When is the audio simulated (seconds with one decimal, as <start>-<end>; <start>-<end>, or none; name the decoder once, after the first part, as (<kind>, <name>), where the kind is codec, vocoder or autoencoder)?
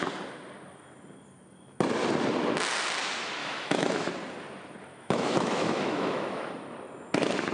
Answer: 3.4-4.1 (autoencoder, DAC-VAE); 4.9-6.5